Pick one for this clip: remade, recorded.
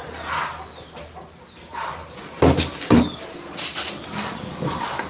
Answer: recorded